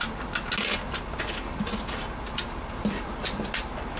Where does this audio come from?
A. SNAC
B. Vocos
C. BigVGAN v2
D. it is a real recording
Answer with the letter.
D